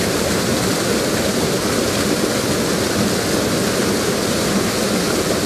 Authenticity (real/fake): real